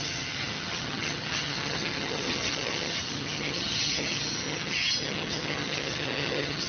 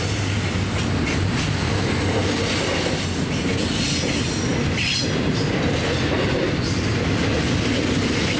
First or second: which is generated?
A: first